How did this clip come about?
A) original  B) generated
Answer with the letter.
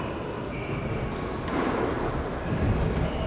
A